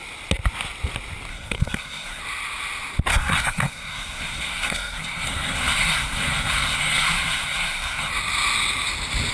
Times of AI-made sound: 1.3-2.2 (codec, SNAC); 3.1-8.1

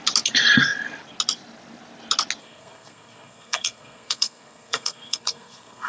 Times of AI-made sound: 2.4-5.9 (codec, SNAC)

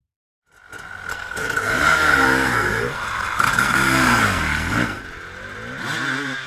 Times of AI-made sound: 1.1-5.0 (codec, SNAC)